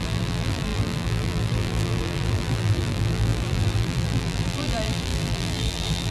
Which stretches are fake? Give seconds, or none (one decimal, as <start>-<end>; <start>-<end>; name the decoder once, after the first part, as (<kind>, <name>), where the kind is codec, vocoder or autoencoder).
0.0-6.1 (vocoder, BigVGAN v2)

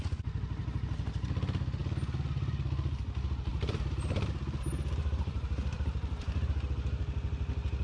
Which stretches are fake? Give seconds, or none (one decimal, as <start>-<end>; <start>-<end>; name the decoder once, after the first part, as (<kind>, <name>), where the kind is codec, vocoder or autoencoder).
0.6-1.3 (vocoder, BigVGAN v2); 3.5-6.5